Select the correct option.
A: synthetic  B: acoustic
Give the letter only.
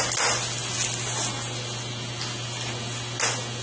B